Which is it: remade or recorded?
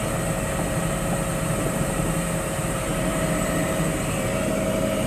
remade